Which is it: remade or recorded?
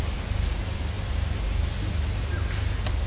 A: recorded